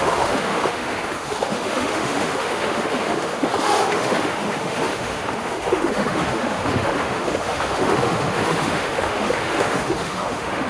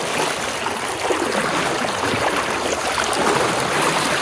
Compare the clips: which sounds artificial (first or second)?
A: first